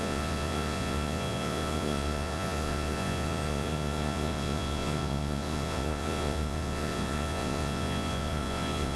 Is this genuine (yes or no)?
no